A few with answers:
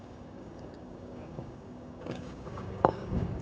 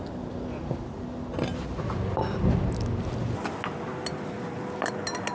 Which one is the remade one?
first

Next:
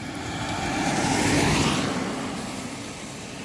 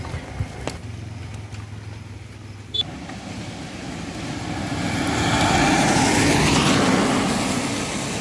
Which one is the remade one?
first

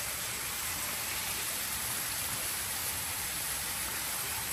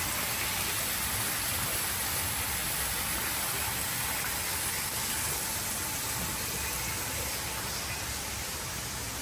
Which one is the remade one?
first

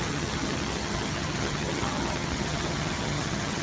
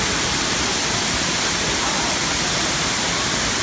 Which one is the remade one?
first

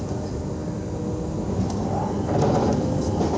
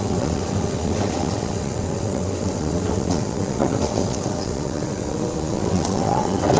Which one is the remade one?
second